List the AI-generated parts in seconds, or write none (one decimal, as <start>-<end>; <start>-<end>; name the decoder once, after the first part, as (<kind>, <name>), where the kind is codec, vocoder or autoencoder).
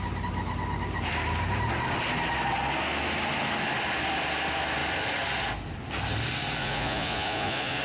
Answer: 6.6-7.8 (vocoder, Vocos)